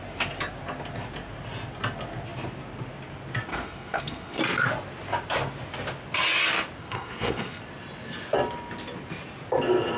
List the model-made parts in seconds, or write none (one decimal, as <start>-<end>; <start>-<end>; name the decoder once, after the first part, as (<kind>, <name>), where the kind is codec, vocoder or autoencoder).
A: 3.5-4.4 (codec, SNAC); 6.8-7.6